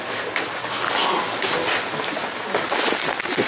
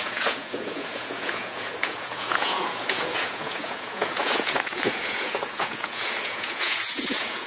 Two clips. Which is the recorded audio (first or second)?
first